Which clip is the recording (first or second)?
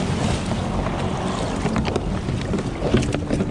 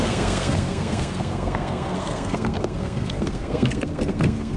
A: first